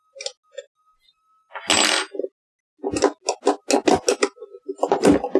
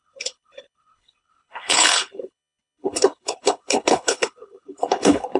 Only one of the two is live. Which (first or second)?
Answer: first